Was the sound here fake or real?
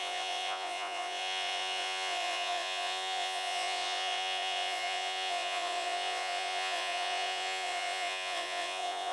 fake